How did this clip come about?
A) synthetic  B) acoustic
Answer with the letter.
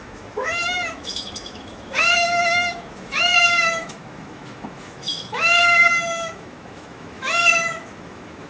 A